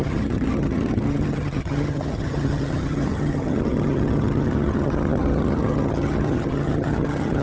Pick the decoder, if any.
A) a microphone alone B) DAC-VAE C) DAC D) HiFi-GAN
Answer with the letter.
D